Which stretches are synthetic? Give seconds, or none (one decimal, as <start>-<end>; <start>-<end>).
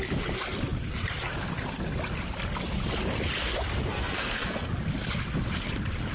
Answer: 3.9-4.7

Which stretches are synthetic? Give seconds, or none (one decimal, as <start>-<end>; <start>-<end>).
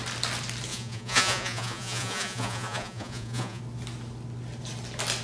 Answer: 0.7-3.6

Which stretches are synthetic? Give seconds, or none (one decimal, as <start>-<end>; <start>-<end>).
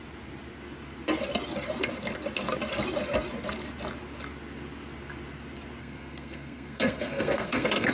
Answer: 5.8-7.9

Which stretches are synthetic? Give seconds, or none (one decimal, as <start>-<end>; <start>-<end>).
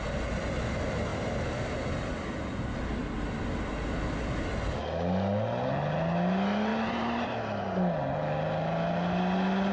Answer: 6.7-7.4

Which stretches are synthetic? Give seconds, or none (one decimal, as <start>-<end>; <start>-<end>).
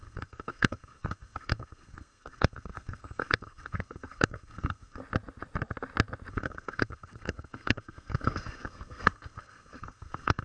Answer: 0.0-5.0; 6.3-10.4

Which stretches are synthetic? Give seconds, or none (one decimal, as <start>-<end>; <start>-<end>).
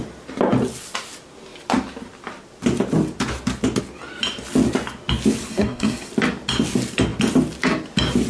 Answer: 5.5-6.1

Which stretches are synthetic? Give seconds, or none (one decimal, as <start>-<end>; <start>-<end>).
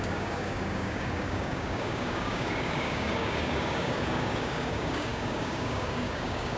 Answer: 0.0-6.6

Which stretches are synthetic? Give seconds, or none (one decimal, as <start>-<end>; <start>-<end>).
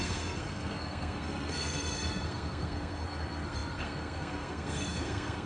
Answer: 0.0-5.5